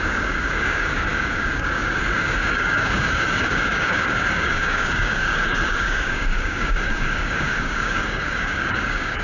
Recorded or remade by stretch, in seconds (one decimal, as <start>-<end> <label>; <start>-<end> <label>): 0.0-9.2 remade